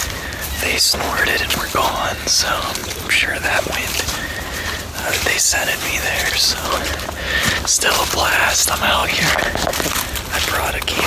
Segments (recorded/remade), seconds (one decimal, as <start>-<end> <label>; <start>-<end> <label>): 0.0-2.8 recorded; 2.8-6.8 remade; 6.8-11.1 recorded